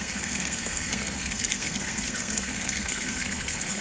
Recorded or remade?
remade